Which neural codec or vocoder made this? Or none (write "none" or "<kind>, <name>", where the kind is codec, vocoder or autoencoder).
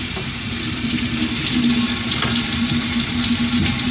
none